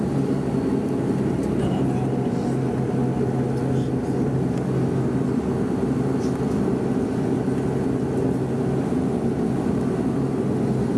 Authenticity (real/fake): real